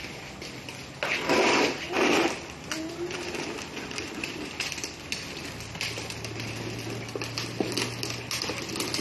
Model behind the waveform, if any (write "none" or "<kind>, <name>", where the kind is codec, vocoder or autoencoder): none